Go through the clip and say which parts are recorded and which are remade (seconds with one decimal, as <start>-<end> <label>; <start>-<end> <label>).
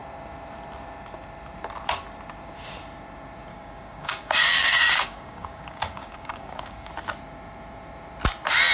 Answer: 0.0-3.5 recorded; 3.5-6.9 remade; 6.9-8.7 recorded